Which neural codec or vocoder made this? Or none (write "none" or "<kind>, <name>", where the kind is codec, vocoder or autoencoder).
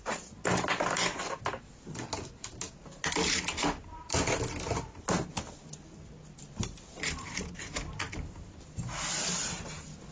none